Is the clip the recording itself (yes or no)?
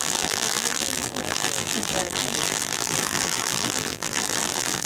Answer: no